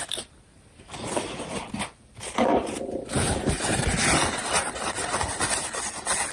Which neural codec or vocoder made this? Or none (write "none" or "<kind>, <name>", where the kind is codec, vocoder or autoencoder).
none